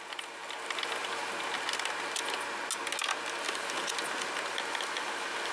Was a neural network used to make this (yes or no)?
no